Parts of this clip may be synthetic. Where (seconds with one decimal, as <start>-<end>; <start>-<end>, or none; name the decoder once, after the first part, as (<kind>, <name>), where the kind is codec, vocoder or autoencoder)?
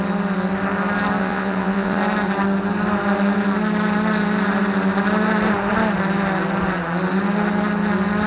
1.2-2.0 (vocoder, WaveNeXt)